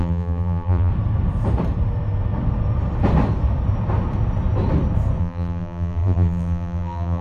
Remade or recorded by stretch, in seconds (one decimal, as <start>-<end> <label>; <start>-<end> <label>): 0.0-0.9 remade; 0.9-5.2 recorded; 5.2-7.2 remade